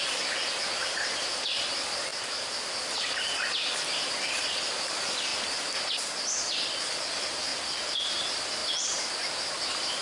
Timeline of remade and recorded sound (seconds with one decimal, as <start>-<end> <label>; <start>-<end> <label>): 0.0-2.1 remade; 2.1-3.5 recorded; 3.5-5.3 remade; 5.3-6.8 recorded; 6.8-7.5 remade; 7.5-8.1 recorded; 8.1-8.6 remade; 8.6-9.3 recorded; 9.3-10.0 remade